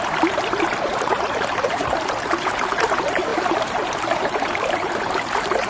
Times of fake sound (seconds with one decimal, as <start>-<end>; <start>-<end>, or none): 0.0-5.7